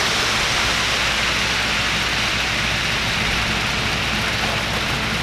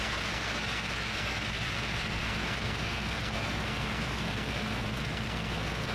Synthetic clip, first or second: second